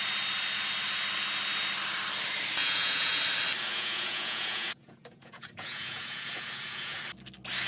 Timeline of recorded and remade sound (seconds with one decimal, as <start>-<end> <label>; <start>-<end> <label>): 0.0-2.6 recorded; 2.6-3.2 remade; 3.2-3.7 recorded; 3.7-7.0 remade; 7.0-7.7 recorded